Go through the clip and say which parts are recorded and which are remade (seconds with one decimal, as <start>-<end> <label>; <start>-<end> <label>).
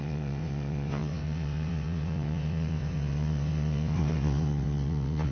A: 0.0-5.3 remade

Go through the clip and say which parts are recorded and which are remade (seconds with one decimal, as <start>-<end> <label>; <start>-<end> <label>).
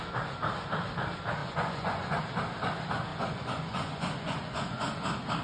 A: 0.0-1.4 recorded; 1.4-2.2 remade; 2.2-3.1 recorded; 3.1-5.0 remade; 5.0-5.4 recorded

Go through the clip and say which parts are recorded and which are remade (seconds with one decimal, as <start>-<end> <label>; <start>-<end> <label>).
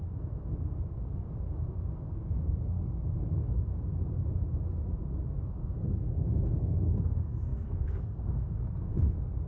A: 0.0-3.7 remade; 3.7-5.4 recorded; 5.4-9.5 remade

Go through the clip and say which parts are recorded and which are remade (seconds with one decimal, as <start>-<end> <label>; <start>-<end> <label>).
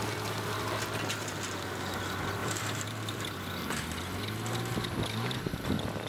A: 0.0-1.2 recorded; 1.2-2.0 remade; 2.0-2.4 recorded; 2.4-3.2 remade; 3.2-6.1 recorded